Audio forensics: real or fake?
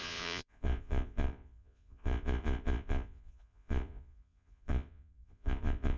fake